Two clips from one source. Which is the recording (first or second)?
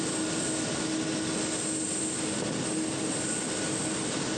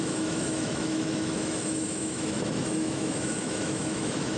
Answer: first